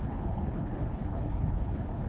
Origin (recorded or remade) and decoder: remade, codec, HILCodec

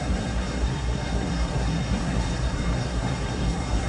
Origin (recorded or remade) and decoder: remade, codec, SNAC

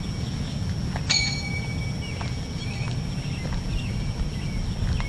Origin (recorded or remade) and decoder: recorded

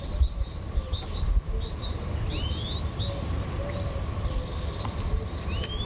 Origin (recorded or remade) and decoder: recorded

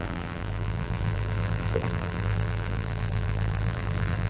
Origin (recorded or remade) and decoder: remade, vocoder, BigVGAN v2